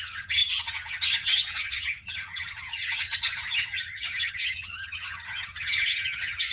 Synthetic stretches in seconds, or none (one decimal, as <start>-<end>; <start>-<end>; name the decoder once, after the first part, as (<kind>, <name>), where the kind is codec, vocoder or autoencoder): 0.0-6.5 (vocoder, HiFi-GAN)